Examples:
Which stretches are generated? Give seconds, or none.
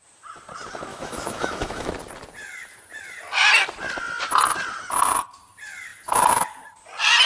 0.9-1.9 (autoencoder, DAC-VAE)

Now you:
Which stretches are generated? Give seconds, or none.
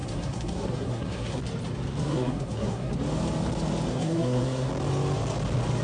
0.0-1.4 (codec, SNAC); 2.0-2.9; 3.9-4.7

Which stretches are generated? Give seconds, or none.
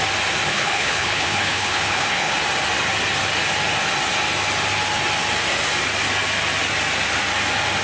0.5-2.3 (codec, HILCodec)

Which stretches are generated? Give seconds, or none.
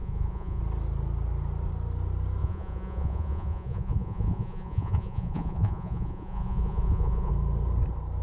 0.0-0.6 (vocoder, Vocos); 2.4-7.3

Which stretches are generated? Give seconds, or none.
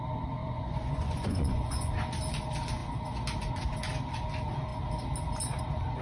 0.4-1.9 (vocoder, Vocos)